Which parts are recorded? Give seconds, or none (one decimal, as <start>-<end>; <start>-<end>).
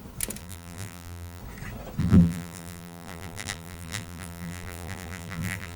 0.0-0.4; 1.4-2.0